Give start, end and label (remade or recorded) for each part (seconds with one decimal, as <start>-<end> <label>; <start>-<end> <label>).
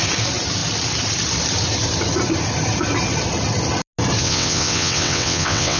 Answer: 0.0-4.2 recorded; 4.2-5.8 remade